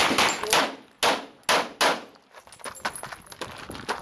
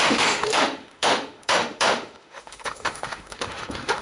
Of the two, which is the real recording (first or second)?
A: first